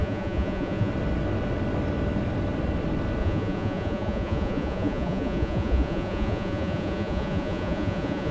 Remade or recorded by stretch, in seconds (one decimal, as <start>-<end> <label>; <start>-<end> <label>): 0.0-0.9 remade; 0.9-3.2 recorded; 3.2-8.3 remade